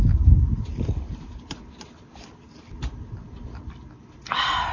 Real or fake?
real